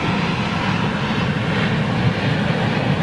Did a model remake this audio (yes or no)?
no